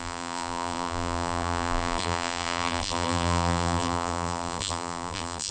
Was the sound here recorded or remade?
remade